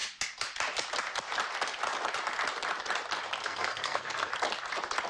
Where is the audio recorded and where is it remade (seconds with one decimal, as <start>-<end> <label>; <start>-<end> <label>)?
0.0-3.4 recorded; 3.4-4.3 remade; 4.3-5.1 recorded